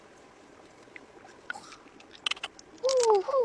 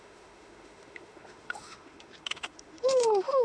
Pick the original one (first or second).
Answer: first